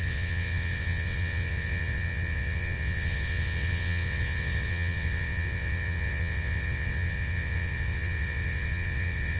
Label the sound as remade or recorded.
remade